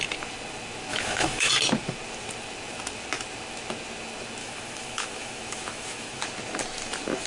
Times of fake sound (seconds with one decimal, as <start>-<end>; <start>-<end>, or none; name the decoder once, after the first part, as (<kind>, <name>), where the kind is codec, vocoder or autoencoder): 0.9-1.5 (autoencoder, DAC-VAE); 4.4-6.2